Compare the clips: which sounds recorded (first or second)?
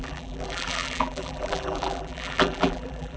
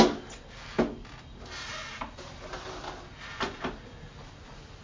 second